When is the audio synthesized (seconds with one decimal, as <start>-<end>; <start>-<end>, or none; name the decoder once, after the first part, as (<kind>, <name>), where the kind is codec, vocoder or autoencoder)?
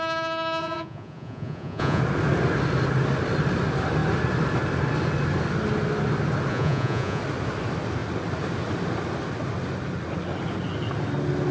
0.6-2.0 (vocoder, Vocos); 6.5-7.2